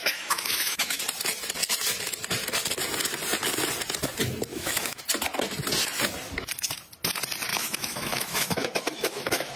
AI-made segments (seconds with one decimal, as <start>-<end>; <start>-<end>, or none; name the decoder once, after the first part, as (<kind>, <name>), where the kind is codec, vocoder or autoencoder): 0.0-1.0 (autoencoder, DAC-VAE); 4.5-5.0; 7.5-9.6